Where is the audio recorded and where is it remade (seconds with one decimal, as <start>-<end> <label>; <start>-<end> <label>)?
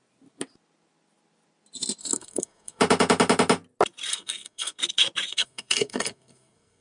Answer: 0.0-2.0 recorded; 2.0-2.8 remade; 2.8-4.1 recorded; 4.1-4.8 remade; 4.8-5.3 recorded; 5.3-6.8 remade